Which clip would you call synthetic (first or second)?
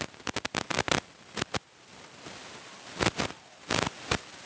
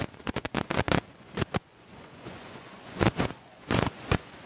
second